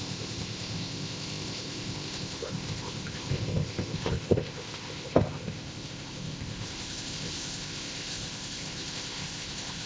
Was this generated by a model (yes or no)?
yes